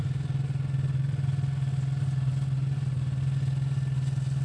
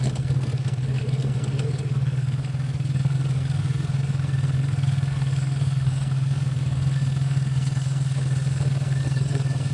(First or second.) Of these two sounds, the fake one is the second